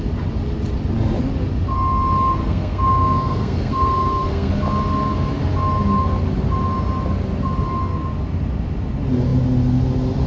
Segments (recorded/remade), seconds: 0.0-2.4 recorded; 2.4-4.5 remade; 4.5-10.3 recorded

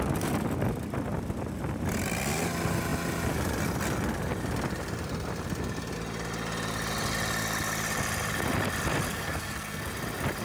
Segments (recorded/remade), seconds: 0.0-9.1 recorded; 9.1-9.9 remade; 9.9-10.4 recorded

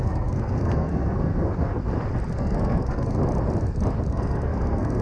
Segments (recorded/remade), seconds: 0.0-1.8 remade; 1.8-2.3 recorded; 2.3-3.2 remade; 3.2-4.1 recorded; 4.1-5.0 remade

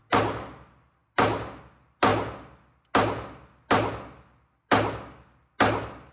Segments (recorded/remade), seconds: 0.0-6.1 recorded